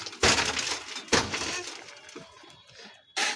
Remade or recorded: recorded